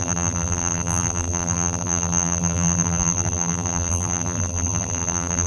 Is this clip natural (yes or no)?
no